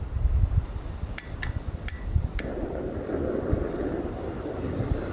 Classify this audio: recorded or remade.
recorded